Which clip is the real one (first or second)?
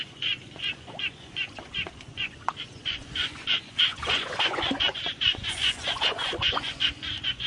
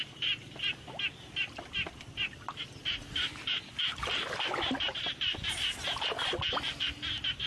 second